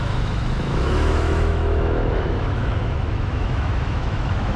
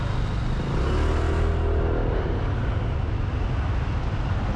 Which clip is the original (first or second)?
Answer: second